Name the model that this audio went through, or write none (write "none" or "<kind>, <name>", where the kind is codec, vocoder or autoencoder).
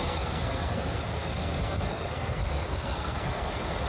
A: codec, SNAC